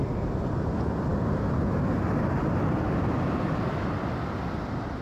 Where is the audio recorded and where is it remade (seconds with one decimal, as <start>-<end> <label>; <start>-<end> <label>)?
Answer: 0.0-5.0 recorded